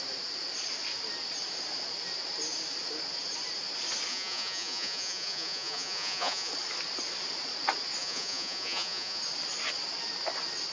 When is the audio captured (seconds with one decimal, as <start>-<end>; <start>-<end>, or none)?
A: 0.0-4.1; 6.5-8.0; 9.2-10.7